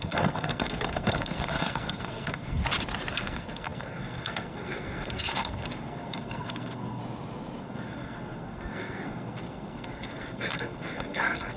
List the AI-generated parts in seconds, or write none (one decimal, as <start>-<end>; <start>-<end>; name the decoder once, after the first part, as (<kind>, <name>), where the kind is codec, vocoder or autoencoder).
0.0-2.6 (codec, SNAC); 3.1-7.0; 7.6-11.6